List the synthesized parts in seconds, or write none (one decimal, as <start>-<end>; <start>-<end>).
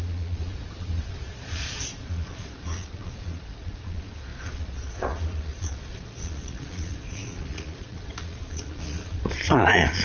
0.0-10.0